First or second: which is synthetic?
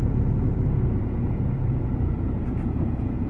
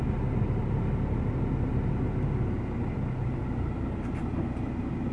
first